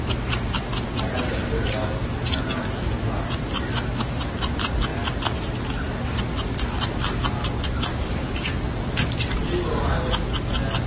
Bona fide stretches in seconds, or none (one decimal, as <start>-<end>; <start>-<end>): 0.0-7.9; 9.8-10.9